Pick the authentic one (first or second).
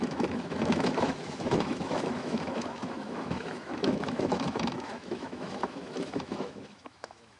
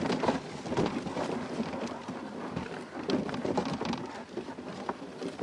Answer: second